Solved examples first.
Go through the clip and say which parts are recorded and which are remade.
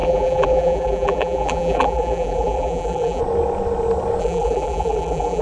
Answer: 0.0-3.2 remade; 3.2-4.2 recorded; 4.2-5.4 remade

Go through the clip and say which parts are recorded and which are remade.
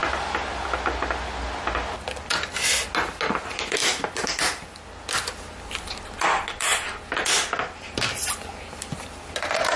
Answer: 0.0-9.8 recorded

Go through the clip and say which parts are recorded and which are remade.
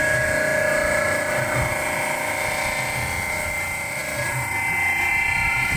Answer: 0.0-5.8 recorded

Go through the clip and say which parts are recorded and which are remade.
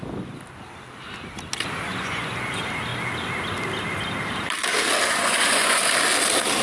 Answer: 0.0-1.9 recorded; 1.9-2.5 remade; 2.5-5.1 recorded; 5.1-5.8 remade; 5.8-6.6 recorded